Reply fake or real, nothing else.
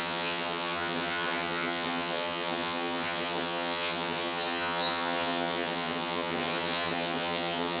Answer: fake